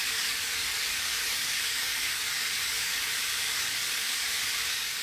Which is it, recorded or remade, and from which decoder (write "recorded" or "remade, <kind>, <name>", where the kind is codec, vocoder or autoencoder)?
remade, codec, DAC